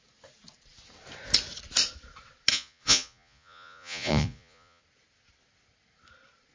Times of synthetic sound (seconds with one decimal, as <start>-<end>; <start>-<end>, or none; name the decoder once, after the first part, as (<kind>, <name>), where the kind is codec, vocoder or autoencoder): 2.5-4.8 (vocoder, Vocos)